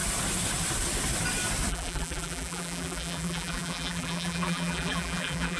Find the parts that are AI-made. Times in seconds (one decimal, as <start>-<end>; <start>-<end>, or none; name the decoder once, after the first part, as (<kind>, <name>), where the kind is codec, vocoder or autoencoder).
1.7-5.6 (vocoder, BigVGAN v2)